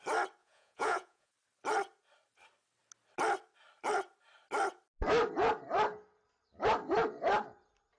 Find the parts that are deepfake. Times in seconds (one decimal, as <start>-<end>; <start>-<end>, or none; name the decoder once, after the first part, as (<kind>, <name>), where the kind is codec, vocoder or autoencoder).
0.4-1.3 (vocoder, Vocos)